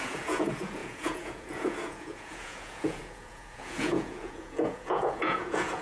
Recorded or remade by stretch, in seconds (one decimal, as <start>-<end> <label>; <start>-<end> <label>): 0.0-5.8 remade